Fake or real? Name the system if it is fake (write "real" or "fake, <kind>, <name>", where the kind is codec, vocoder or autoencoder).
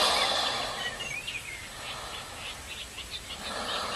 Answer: real